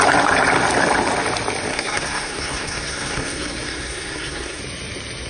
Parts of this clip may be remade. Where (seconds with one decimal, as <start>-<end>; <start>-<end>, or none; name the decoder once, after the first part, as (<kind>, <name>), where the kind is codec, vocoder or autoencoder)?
1.7-4.6 (codec, SNAC)